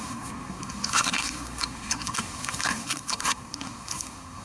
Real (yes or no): no